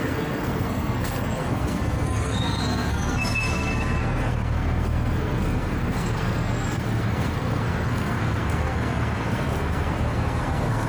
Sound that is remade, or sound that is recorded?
remade